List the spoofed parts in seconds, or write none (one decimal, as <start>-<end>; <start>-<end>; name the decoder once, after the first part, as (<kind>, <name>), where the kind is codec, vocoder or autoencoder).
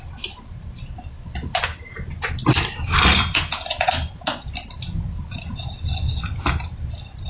3.3-4.0 (vocoder, Vocos)